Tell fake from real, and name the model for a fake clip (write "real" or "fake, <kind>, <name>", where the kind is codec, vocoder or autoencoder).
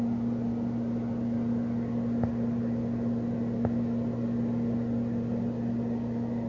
real